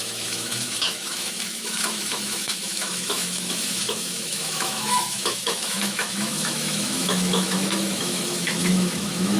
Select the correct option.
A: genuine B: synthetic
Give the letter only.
B